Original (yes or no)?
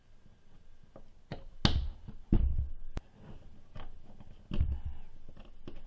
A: yes